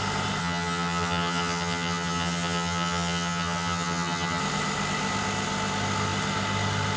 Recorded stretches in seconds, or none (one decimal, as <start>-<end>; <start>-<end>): 0.0-0.4; 4.4-7.0